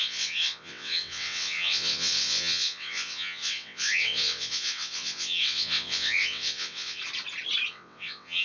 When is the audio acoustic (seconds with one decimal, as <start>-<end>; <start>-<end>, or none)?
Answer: 7.0-7.7

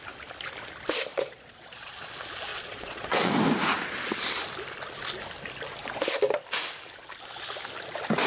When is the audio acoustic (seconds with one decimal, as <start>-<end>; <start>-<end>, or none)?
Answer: 0.0-1.1; 1.9-2.5; 3.3-8.3

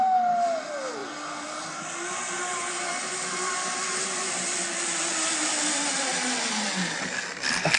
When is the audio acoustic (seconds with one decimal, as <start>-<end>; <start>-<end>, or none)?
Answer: 0.0-7.8

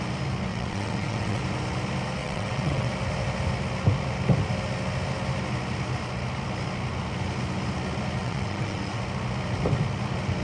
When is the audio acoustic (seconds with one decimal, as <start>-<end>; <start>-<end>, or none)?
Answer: 0.0-0.5; 1.4-2.2; 2.9-8.2; 9.0-10.4

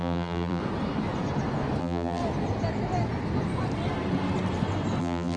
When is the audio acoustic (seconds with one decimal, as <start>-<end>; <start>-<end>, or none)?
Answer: 0.6-1.8; 2.2-5.0

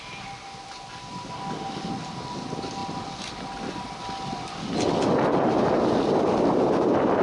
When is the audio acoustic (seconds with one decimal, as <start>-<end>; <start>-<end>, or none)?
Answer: 0.0-7.2

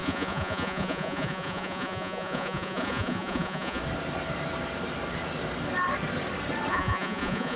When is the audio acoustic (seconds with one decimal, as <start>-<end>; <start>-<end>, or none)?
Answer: 3.8-6.7

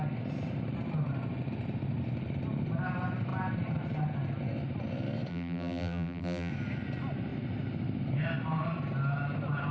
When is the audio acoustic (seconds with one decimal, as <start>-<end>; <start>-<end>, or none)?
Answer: 0.0-5.3; 6.5-9.7